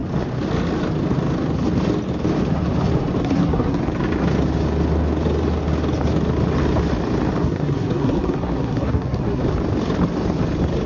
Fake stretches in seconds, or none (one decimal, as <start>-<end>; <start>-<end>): 3.2-3.8; 7.4-9.4